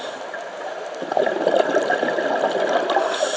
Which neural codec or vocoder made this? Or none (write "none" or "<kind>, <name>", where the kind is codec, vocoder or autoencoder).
none